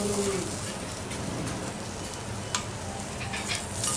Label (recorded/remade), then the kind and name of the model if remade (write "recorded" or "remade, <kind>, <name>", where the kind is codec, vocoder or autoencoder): recorded